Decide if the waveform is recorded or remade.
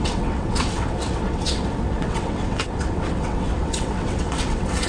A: remade